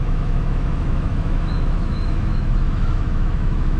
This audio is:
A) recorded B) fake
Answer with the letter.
B